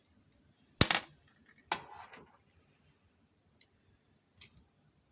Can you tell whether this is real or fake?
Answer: real